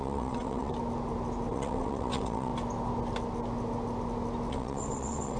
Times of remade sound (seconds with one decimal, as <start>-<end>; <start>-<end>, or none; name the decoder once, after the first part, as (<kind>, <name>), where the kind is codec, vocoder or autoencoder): 0.0-0.7 (vocoder, WaveNeXt); 1.5-2.5; 4.5-5.4